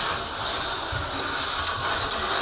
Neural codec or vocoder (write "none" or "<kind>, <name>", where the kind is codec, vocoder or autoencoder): none